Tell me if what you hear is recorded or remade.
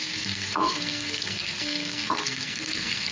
remade